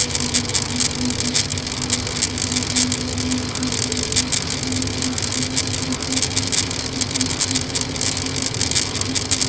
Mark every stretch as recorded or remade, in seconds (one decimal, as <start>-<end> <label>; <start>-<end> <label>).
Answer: 0.0-9.5 recorded